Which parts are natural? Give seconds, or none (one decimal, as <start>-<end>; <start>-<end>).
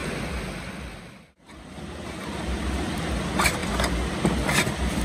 0.0-5.0